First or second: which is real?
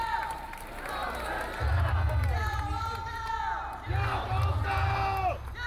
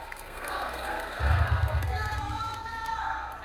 first